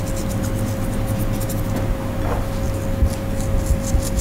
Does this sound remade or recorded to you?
recorded